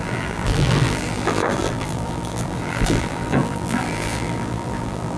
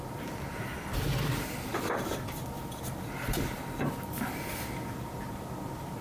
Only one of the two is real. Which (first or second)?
second